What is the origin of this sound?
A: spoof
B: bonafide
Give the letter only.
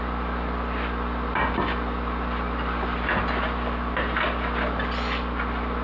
B